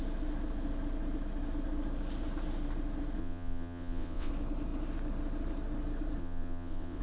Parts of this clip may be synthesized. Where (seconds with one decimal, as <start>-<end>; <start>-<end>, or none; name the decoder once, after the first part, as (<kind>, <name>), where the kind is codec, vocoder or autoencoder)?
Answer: 3.2-4.3 (vocoder, WaveNeXt); 6.2-7.0